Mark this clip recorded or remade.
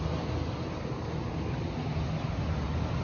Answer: recorded